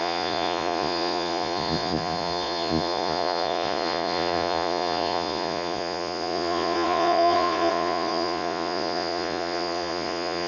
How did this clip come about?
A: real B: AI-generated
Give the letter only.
B